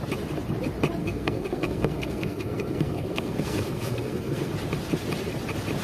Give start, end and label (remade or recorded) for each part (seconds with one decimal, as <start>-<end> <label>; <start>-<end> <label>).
0.0-1.0 recorded; 1.0-4.5 remade; 4.5-5.8 recorded